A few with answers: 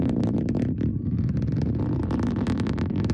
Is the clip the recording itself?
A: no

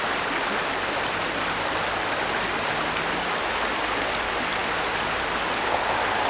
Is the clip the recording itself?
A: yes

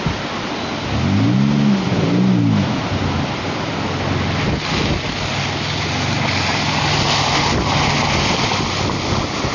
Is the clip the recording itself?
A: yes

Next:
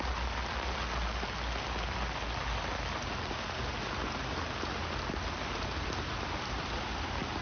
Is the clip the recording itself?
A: yes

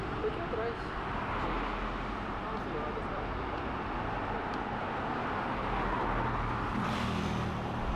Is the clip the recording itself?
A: yes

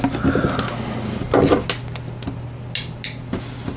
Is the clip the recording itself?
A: yes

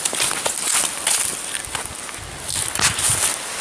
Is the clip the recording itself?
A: yes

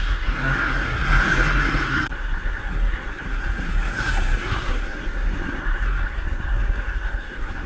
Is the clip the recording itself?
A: no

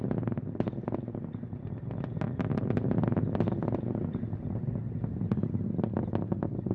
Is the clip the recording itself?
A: yes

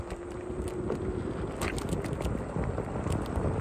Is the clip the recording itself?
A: yes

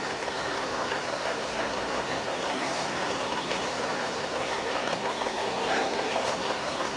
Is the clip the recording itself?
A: no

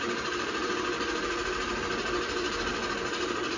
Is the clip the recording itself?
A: yes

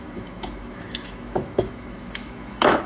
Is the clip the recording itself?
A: no